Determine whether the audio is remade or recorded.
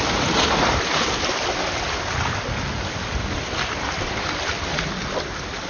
recorded